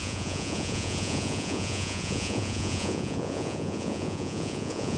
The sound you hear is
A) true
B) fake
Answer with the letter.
B